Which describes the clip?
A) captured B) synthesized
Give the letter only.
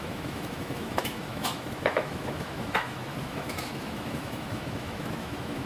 B